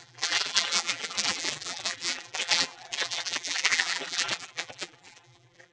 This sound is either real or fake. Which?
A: fake